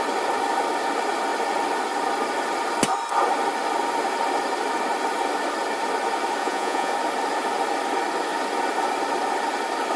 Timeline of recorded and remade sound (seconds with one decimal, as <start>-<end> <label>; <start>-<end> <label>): 0.0-6.4 recorded; 6.4-6.9 remade; 6.9-10.0 recorded